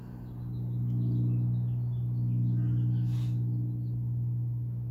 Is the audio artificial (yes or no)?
no